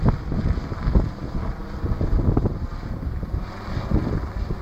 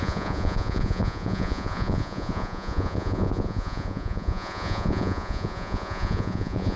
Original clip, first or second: first